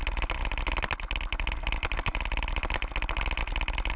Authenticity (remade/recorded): recorded